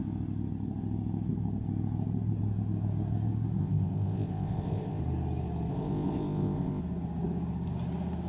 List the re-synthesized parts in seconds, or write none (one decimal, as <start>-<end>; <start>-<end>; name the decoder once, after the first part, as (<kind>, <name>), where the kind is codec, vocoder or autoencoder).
3.6-5.0 (codec, ZipCodec); 5.7-6.8